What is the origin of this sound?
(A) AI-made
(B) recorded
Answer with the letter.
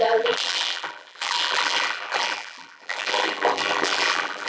A